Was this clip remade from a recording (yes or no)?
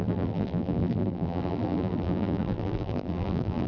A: yes